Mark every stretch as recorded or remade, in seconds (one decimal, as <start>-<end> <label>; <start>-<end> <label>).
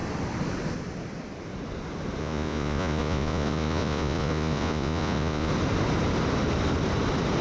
0.0-2.2 recorded; 2.2-5.5 remade; 5.5-7.4 recorded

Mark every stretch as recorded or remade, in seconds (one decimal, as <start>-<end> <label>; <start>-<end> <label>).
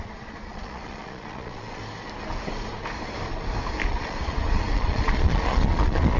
0.0-1.8 remade; 1.8-3.9 recorded; 3.9-6.2 remade